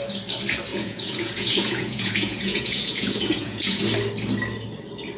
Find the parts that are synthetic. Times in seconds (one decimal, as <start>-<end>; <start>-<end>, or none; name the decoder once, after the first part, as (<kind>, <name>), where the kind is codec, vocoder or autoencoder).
0.7-3.8 (vocoder, Vocos)